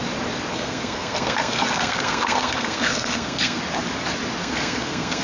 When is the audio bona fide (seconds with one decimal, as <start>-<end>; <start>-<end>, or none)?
0.0-0.5; 3.6-4.4